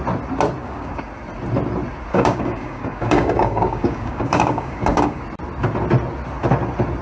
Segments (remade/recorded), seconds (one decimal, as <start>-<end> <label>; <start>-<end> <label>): 0.0-0.6 recorded; 0.6-1.1 remade; 1.1-2.1 recorded; 2.1-5.2 remade; 5.2-7.0 recorded